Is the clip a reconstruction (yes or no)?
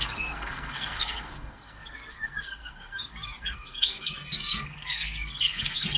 yes